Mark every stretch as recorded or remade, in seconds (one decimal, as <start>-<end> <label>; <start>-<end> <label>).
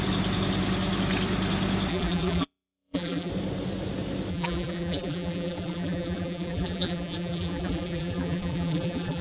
0.0-1.9 recorded; 1.9-3.3 remade; 3.3-4.3 recorded; 4.3-9.2 remade